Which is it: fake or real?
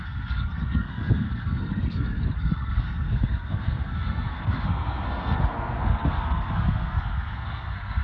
fake